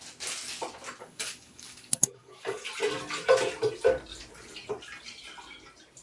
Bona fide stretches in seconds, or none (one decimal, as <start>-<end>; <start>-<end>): 0.0-1.0; 2.7-6.0